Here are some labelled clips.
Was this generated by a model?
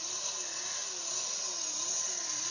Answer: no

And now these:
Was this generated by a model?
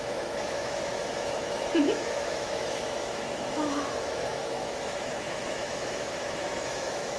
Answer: yes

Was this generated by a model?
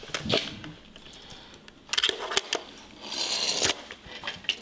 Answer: no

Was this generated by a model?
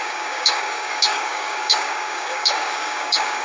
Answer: yes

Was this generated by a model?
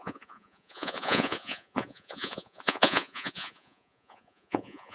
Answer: yes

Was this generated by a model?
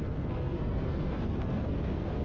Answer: yes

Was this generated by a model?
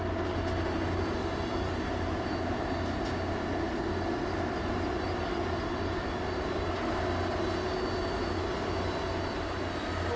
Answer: no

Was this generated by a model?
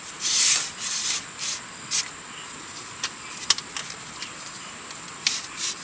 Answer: no